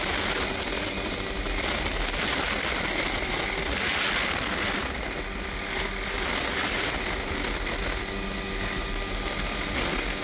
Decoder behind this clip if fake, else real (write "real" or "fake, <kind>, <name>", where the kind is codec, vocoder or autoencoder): real